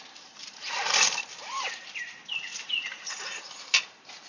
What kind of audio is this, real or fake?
real